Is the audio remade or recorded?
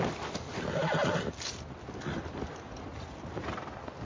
recorded